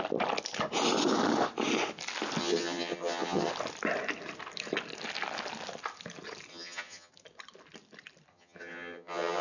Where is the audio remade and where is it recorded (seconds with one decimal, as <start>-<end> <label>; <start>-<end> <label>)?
0.0-2.4 recorded; 2.4-3.5 remade; 3.5-6.5 recorded; 6.5-7.1 remade; 7.1-8.3 recorded; 8.3-9.4 remade